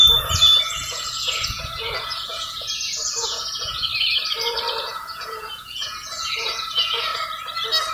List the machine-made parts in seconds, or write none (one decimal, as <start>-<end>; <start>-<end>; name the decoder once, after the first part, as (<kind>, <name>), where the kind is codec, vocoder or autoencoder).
0.0-3.9 (vocoder, Vocos); 4.8-7.1